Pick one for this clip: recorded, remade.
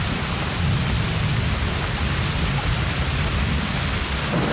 remade